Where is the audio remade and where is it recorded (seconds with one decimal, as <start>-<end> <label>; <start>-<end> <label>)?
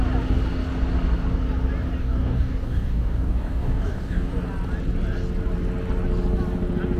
0.0-2.0 recorded; 2.0-4.3 remade; 4.3-7.0 recorded